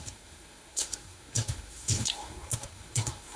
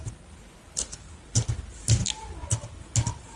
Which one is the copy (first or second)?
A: first